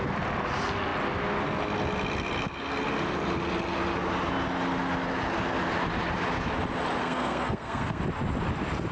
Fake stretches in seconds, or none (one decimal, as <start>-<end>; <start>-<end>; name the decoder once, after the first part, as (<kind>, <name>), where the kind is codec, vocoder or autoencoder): 7.0-8.0 (codec, SNAC)